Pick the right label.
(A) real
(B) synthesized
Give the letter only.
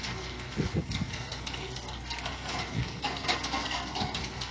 B